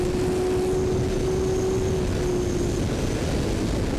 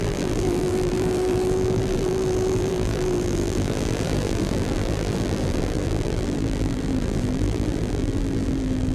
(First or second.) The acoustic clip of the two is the first